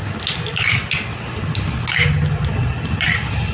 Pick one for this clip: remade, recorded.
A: recorded